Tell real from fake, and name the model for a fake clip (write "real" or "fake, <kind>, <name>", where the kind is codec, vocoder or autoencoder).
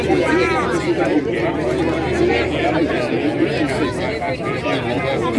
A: real